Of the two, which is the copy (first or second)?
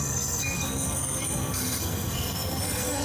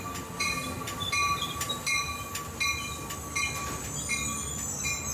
first